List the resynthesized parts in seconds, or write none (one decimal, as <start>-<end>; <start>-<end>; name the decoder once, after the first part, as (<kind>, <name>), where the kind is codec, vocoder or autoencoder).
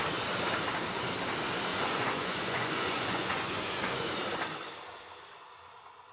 1.7-4.1 (vocoder, Vocos)